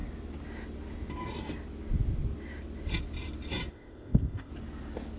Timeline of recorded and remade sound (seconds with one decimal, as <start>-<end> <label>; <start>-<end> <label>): 0.0-3.7 recorded; 3.7-4.5 remade; 4.5-5.2 recorded